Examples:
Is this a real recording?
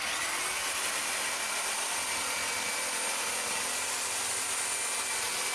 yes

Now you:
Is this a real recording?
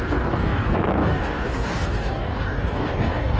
no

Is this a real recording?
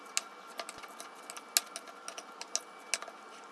yes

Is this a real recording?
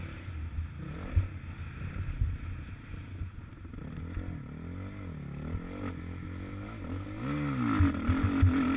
yes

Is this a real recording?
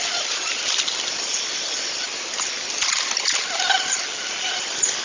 yes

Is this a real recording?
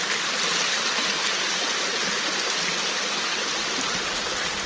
yes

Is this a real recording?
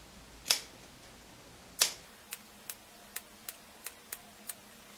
yes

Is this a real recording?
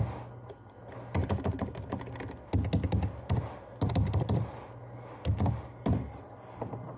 yes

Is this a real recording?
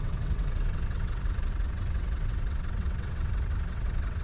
no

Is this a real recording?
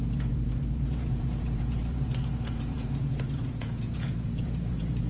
no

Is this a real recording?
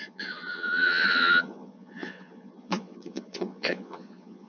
no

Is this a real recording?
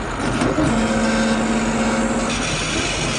yes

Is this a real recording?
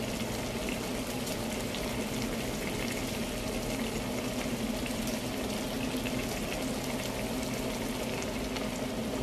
yes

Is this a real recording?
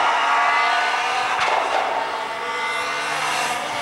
yes